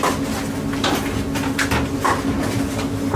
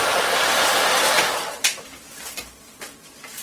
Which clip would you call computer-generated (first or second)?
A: second